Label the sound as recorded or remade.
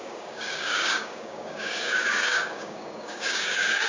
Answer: remade